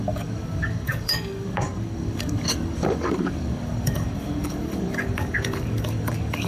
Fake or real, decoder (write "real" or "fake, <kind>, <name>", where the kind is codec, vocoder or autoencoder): fake, codec, DAC